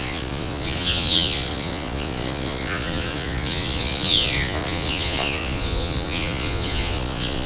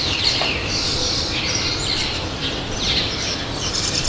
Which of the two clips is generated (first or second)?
first